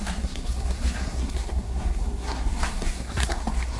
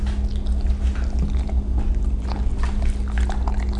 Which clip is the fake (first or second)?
first